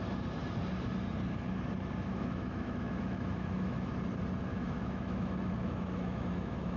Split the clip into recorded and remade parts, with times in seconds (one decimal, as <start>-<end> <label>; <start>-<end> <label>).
0.0-2.1 recorded; 2.1-3.9 remade; 3.9-4.5 recorded; 4.5-6.8 remade